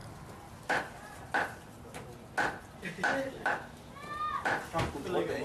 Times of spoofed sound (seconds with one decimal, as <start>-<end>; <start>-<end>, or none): none